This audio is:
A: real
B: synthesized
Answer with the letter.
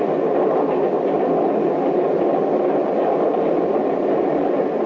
A